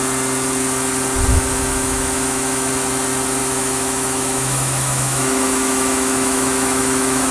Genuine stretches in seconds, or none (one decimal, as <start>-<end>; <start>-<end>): 0.0-1.3; 2.7-3.4